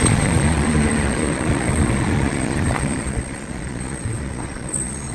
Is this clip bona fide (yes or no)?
no